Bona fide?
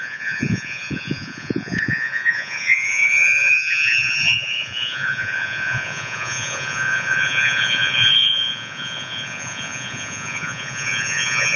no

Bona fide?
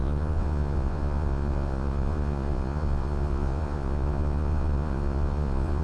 no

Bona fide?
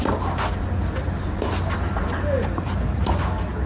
yes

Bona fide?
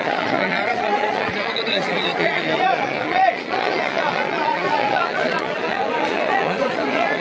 no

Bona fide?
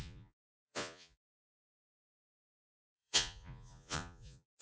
no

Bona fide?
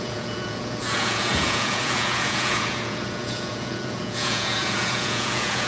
no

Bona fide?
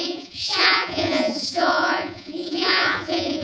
no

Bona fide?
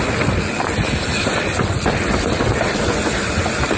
yes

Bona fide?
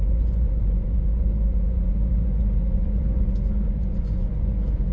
no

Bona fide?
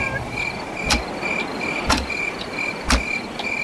yes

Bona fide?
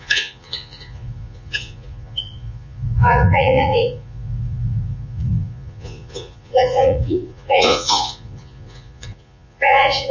no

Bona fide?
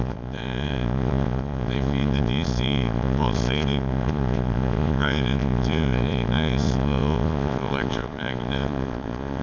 no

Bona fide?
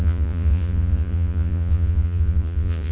no